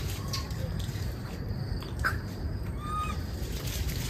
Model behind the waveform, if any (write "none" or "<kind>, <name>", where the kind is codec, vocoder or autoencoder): vocoder, BigVGAN v2